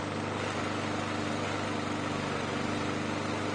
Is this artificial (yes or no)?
no